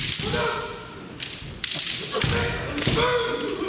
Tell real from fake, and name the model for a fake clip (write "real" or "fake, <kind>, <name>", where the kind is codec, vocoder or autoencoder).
real